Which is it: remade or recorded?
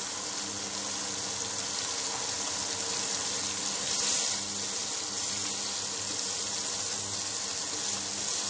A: recorded